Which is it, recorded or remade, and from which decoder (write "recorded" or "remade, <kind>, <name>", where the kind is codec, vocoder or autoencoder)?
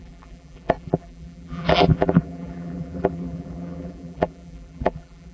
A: remade, vocoder, BigVGAN v2